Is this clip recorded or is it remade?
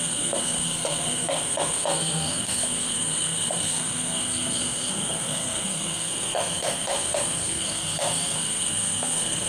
remade